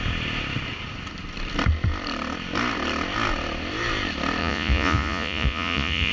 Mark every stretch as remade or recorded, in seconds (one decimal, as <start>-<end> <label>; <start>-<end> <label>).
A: 0.0-4.4 recorded; 4.4-6.1 remade